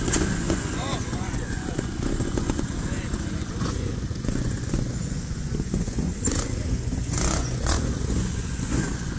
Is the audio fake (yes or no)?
yes